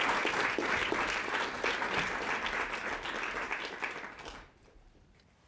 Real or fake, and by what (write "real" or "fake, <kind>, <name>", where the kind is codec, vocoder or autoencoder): real